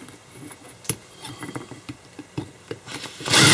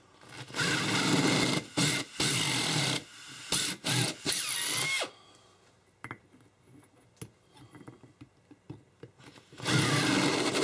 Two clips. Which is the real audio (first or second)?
second